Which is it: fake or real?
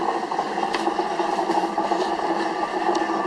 fake